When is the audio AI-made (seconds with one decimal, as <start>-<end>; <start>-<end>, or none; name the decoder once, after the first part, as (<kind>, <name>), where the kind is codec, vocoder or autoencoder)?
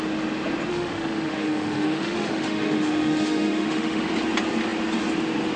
0.7-4.1 (autoencoder, DAC-VAE)